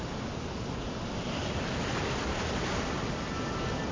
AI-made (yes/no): no